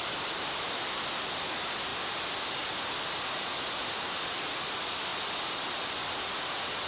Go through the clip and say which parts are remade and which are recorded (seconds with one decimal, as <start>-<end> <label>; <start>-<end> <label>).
0.0-6.9 recorded